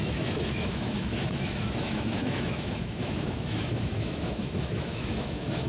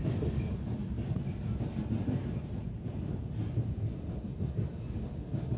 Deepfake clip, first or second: first